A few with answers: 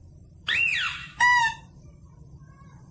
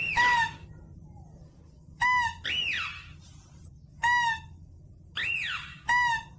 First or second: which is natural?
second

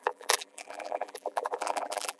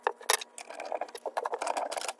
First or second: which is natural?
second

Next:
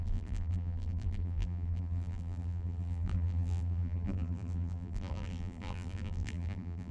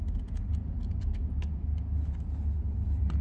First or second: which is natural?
second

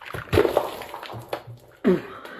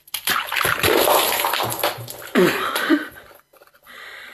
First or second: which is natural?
first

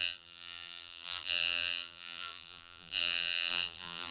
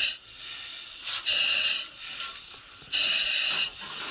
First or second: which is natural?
second